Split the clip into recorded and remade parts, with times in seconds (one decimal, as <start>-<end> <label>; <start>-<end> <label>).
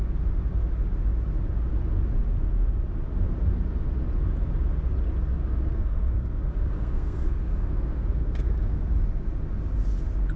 0.0-5.3 recorded; 5.3-8.9 remade; 8.9-10.4 recorded